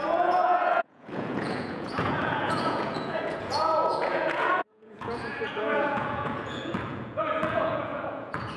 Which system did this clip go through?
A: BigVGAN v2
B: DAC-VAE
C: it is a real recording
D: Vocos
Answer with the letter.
D